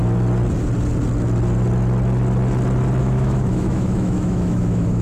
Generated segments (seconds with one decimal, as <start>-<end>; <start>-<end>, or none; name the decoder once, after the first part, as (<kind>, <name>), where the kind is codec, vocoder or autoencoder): 3.0-5.0 (autoencoder, DAC-VAE)

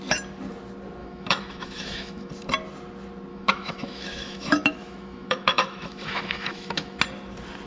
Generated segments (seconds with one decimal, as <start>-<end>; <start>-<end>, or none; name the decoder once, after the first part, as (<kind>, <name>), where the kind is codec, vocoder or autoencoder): 1.0-2.3 (autoencoder, DAC-VAE); 3.3-7.0

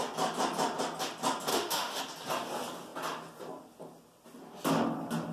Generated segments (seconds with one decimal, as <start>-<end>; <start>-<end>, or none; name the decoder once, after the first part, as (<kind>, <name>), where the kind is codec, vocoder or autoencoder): 1.5-2.0 (autoencoder, DAC-VAE)

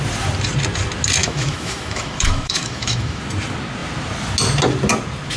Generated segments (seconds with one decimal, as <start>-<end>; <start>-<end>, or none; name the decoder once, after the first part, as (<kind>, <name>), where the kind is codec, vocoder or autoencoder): 1.2-3.2 (autoencoder, DAC-VAE)

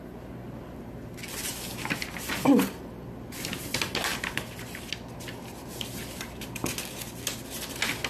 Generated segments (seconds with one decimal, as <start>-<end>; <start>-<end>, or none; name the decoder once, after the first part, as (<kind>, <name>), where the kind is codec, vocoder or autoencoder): none